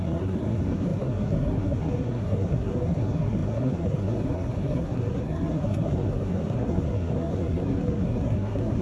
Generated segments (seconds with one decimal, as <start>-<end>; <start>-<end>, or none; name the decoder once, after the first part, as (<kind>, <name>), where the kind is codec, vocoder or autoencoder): 0.0-8.8 (codec, SNAC)